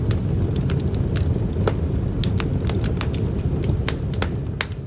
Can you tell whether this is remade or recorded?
recorded